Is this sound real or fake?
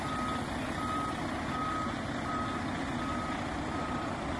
real